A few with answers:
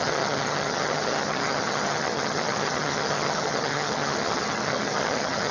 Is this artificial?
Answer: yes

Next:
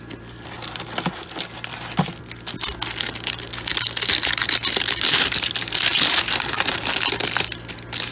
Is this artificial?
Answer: no